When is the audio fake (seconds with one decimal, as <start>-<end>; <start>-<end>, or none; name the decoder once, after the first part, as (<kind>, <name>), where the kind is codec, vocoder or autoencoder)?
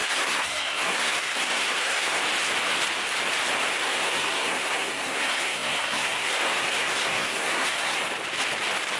0.0-2.2 (codec, SNAC); 3.7-8.0